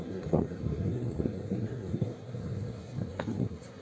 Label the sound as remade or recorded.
remade